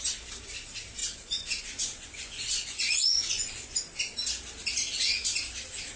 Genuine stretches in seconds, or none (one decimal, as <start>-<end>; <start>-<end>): 0.0-1.0; 3.8-6.0